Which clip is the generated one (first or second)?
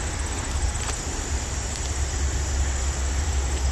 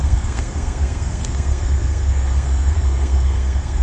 second